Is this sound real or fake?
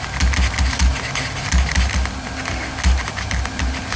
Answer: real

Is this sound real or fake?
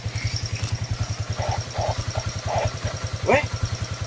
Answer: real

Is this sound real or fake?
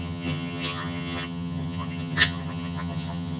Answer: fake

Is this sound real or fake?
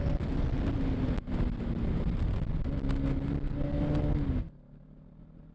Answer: real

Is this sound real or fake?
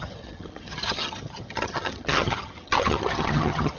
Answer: fake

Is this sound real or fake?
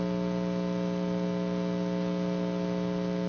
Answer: real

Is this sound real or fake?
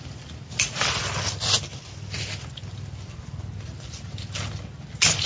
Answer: real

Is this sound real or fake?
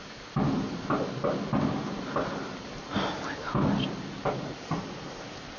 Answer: real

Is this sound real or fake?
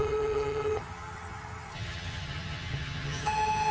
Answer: fake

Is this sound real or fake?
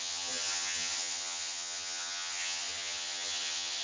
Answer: fake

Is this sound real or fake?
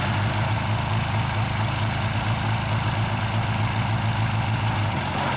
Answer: real